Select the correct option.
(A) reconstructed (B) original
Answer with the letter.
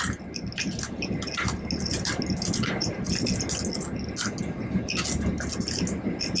B